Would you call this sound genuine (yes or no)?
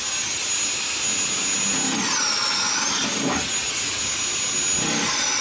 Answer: yes